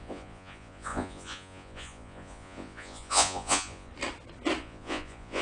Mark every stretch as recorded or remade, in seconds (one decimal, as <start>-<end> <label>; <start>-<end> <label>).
0.0-3.9 remade; 3.9-4.6 recorded; 4.6-5.4 remade